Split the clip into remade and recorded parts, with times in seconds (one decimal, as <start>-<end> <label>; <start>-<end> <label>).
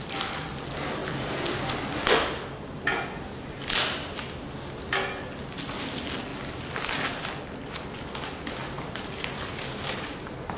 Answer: 0.0-8.6 recorded; 8.6-10.6 remade